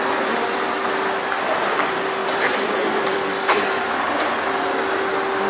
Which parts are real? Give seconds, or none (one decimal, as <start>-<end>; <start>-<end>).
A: 0.0-2.2; 3.2-5.5